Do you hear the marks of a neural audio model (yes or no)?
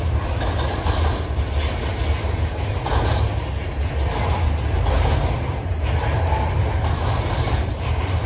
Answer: no